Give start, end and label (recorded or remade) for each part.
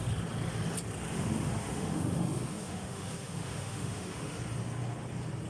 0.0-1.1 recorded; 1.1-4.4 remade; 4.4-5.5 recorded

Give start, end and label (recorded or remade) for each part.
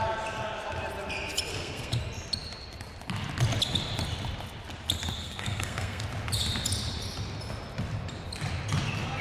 0.0-1.5 recorded; 1.5-2.0 remade; 2.0-5.2 recorded; 5.2-6.0 remade; 6.0-9.2 recorded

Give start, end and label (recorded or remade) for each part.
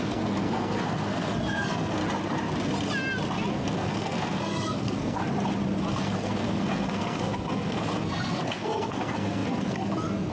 0.0-2.0 remade; 2.0-3.5 recorded; 3.5-5.2 remade; 5.2-5.9 recorded; 5.9-10.3 remade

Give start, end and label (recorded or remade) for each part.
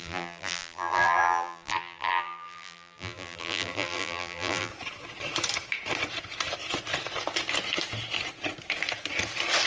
0.0-4.7 remade; 4.7-9.7 recorded